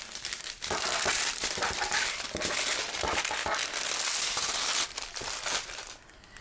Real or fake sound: real